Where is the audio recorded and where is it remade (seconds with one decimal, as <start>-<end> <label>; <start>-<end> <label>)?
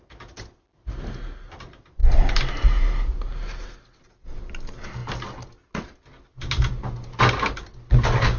0.0-8.4 recorded